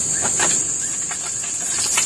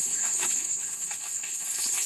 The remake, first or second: second